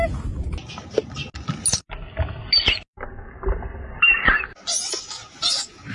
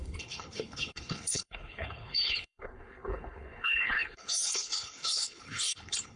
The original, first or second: first